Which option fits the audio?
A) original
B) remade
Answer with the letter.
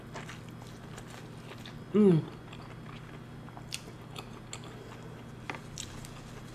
A